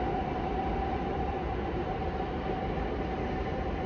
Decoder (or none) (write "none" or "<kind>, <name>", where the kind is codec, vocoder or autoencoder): none